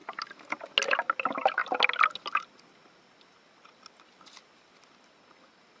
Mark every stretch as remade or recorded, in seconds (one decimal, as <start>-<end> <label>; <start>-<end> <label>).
0.0-5.8 recorded